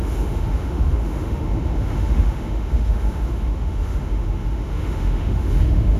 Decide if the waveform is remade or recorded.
remade